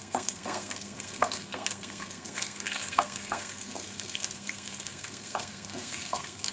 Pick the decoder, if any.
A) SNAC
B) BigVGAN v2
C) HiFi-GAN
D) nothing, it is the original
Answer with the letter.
A